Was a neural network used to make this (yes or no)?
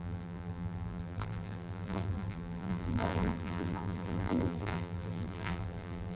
yes